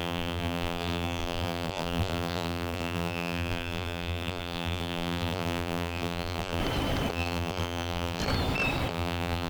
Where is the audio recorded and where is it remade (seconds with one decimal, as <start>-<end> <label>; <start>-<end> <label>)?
0.0-6.6 remade; 6.6-7.1 recorded; 7.1-8.2 remade; 8.2-8.9 recorded; 8.9-9.5 remade